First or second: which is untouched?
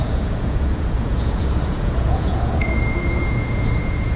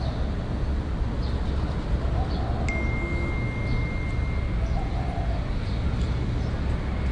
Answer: second